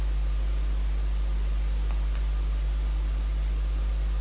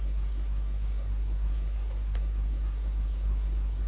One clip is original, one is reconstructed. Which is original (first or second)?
first